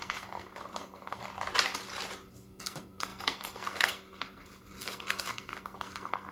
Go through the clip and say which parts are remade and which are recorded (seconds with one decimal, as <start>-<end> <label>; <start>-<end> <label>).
0.0-1.3 remade; 1.3-2.3 recorded; 2.3-6.3 remade